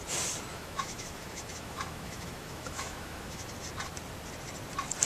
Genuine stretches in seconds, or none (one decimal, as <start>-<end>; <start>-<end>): 0.0-0.5; 3.5-5.0